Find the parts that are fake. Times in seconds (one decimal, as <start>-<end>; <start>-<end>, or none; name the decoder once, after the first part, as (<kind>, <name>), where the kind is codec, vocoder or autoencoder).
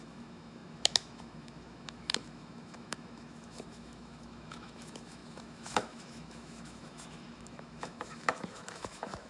0.0-9.3 (autoencoder, DAC-VAE)